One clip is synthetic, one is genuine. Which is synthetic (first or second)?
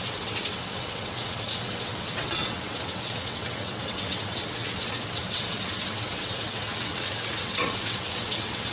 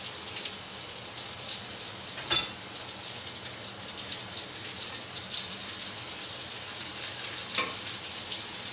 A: first